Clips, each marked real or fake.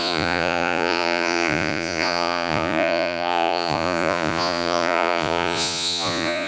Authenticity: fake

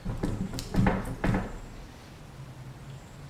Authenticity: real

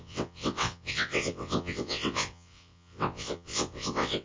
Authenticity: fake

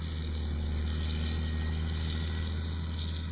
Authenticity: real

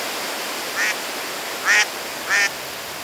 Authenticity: real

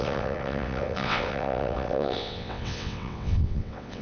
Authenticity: fake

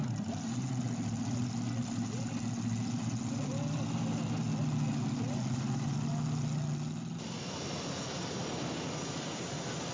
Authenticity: real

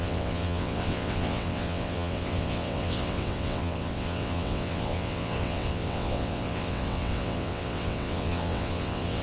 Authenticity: fake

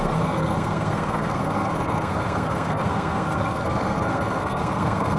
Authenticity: fake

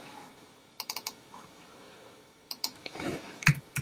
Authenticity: fake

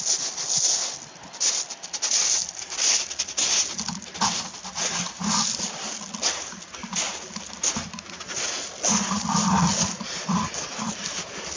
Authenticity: real